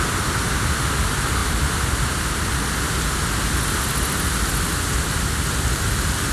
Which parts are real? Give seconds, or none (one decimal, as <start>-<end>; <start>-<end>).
0.0-6.3